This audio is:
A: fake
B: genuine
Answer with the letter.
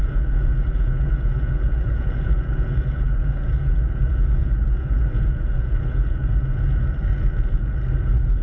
A